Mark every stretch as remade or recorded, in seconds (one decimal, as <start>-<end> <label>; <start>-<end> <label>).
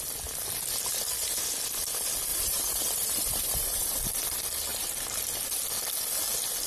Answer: 0.0-2.3 recorded; 2.3-4.2 remade; 4.2-4.7 recorded; 4.7-5.3 remade; 5.3-6.7 recorded